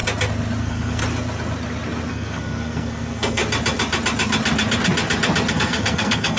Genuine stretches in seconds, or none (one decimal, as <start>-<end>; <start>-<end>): 0.0-0.6; 1.0-2.1; 3.4-5.5